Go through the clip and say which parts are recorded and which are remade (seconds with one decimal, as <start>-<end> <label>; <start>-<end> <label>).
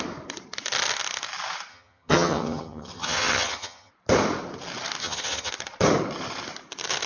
0.0-1.7 recorded; 1.7-3.9 remade; 3.9-5.0 recorded; 5.0-5.5 remade; 5.5-7.1 recorded